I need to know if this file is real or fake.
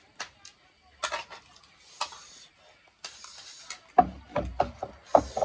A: real